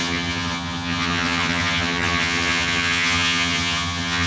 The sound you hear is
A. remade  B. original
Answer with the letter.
A